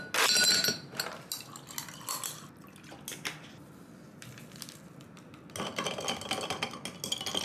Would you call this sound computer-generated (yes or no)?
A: no